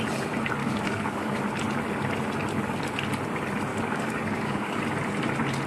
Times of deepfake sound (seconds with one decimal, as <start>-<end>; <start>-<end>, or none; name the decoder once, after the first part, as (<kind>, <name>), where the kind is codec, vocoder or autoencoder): 0.6-1.4 (codec, DAC); 3.7-4.8